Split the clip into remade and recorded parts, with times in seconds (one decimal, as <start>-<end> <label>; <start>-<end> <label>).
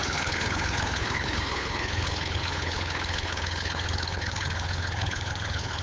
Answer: 0.0-5.8 remade